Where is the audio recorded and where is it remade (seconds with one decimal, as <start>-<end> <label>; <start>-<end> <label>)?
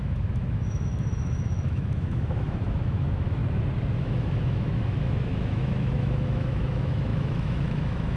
0.0-3.4 remade; 3.4-4.0 recorded; 4.0-8.2 remade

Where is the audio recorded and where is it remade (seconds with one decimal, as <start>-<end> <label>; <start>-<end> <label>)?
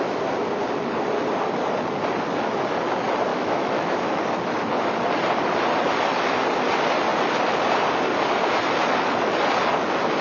0.0-3.3 recorded; 3.3-4.2 remade; 4.2-10.2 recorded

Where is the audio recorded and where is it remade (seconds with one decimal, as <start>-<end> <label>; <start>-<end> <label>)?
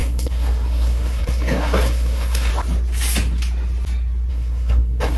0.0-2.5 remade; 2.5-4.3 recorded; 4.3-5.2 remade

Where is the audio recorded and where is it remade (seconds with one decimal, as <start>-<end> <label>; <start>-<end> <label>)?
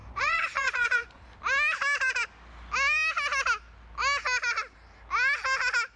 0.0-1.2 remade; 1.2-6.0 recorded